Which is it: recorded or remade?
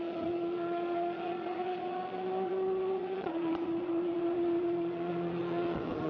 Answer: remade